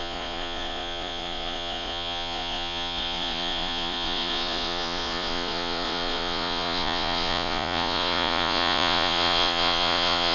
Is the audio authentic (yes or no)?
no